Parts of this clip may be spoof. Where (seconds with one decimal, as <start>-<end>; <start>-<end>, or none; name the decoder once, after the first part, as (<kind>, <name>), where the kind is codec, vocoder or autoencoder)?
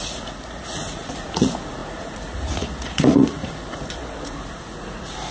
0.0-5.3 (vocoder, Vocos)